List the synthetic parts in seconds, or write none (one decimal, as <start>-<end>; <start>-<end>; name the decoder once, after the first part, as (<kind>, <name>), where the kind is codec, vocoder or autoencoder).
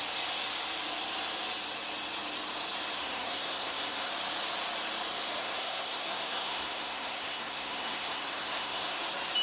3.0-4.1 (codec, SNAC); 5.4-9.0